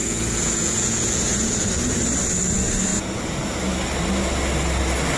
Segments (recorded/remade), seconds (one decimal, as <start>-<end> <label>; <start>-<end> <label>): 0.0-1.7 remade; 1.7-2.9 recorded; 2.9-3.4 remade; 3.4-5.2 recorded